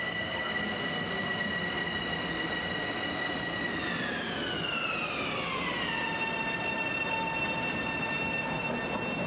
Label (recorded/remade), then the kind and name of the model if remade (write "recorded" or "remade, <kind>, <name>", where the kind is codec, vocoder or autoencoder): recorded